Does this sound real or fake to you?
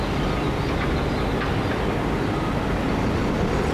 real